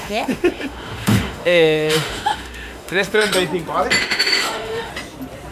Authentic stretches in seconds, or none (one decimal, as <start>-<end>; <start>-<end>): 3.3-4.0; 4.9-5.5